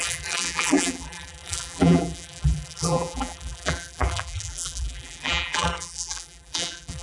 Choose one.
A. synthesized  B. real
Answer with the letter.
A